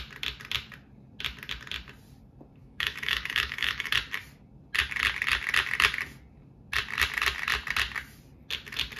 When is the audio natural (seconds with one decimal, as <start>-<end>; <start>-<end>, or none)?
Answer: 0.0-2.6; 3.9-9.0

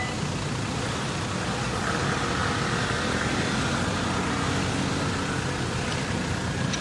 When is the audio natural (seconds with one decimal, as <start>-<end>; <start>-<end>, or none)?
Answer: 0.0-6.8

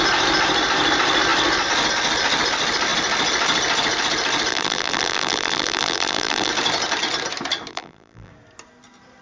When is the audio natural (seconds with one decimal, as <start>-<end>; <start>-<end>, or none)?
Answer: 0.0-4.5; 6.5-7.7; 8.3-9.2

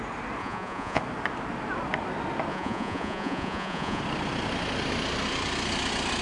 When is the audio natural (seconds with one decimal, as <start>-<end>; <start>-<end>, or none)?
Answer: 0.0-0.4; 1.0-2.5; 4.0-6.2

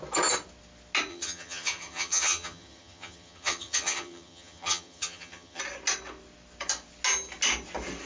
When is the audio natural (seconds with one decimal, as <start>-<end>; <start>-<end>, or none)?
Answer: 0.0-1.1; 5.6-8.1

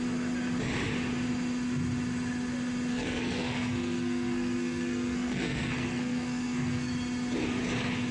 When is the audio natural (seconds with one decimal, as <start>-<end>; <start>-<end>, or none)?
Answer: 0.0-2.9; 6.9-8.1